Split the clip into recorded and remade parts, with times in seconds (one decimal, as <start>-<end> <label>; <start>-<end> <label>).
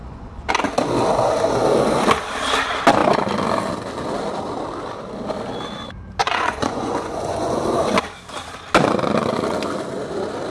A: 0.0-0.5 remade; 0.5-6.2 recorded; 6.2-7.6 remade; 7.6-10.5 recorded